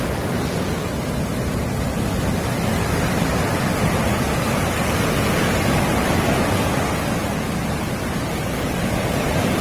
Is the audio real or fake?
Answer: real